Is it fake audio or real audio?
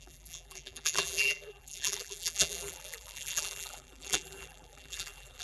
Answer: fake